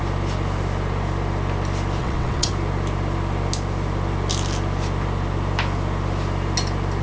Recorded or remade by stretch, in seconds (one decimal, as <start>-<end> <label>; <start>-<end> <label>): 0.0-2.0 recorded; 2.0-2.5 remade; 2.5-7.0 recorded